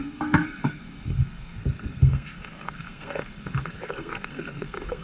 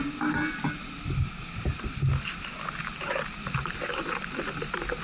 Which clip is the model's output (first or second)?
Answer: first